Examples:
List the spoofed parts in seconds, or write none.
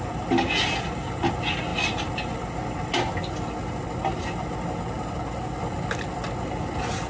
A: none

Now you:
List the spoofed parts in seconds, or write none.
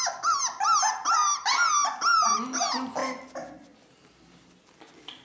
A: none